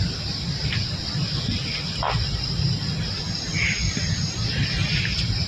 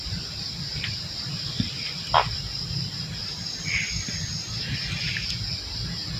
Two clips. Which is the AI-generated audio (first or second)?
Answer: first